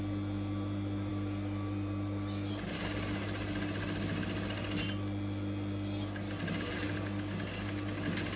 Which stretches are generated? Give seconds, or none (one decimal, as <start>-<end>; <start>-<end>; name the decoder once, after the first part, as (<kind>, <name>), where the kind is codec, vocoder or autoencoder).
none